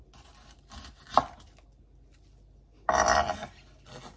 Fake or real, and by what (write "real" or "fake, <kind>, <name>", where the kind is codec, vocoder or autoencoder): real